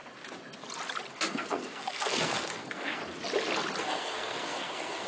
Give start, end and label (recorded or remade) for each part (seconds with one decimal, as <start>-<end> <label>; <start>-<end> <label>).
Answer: 0.0-1.1 recorded; 1.1-3.0 remade; 3.0-3.8 recorded; 3.8-5.1 remade